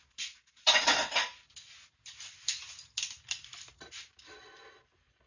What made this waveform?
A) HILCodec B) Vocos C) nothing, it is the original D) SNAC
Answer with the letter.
C